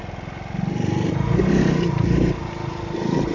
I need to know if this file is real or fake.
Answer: real